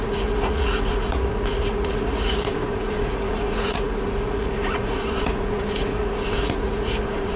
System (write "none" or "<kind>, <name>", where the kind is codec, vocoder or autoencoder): vocoder, Vocos